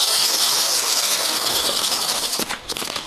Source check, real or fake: fake